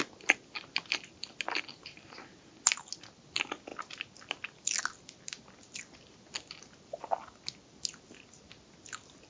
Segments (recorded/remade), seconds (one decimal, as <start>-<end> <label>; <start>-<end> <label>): 0.0-9.3 recorded